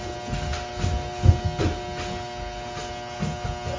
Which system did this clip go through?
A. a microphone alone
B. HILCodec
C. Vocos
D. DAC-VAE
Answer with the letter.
A